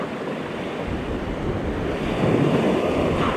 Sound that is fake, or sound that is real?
real